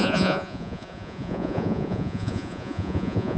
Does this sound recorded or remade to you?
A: remade